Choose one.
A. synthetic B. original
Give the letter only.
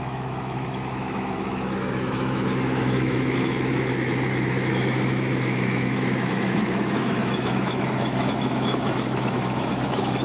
A